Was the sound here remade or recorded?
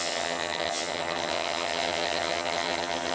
remade